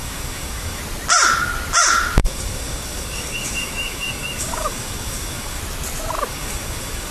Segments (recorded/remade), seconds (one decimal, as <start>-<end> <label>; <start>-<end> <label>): 0.0-0.8 remade; 0.8-2.2 recorded; 2.2-5.6 remade; 5.6-6.3 recorded; 6.3-7.1 remade